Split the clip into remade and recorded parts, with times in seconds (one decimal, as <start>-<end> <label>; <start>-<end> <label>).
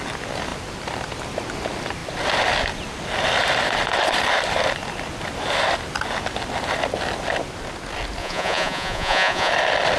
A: 0.0-8.2 recorded; 8.2-9.5 remade; 9.5-10.0 recorded